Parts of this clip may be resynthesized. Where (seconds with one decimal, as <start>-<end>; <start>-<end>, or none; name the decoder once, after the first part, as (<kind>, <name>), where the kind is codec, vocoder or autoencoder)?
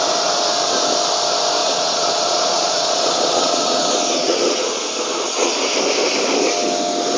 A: 1.6-5.5 (vocoder, Vocos)